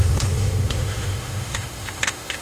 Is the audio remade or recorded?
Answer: remade